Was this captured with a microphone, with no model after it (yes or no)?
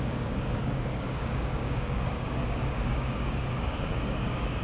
no